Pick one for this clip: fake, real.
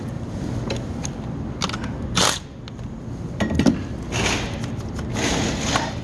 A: real